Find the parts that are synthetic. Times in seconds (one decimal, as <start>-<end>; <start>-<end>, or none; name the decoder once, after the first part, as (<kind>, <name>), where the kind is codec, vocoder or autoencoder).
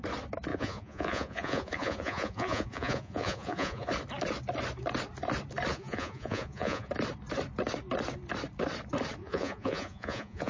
0.5-3.9 (vocoder, Vocos); 5.7-6.9; 9.2-10.5